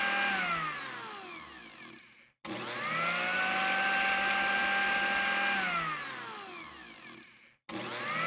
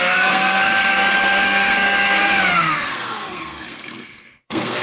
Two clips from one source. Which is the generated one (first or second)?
second